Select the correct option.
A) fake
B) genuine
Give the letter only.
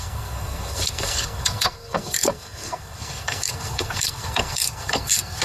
A